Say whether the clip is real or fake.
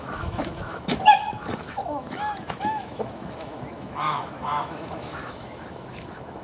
fake